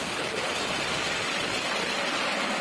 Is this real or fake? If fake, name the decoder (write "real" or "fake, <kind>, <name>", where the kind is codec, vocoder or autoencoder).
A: real